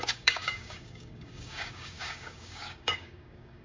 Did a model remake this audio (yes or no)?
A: yes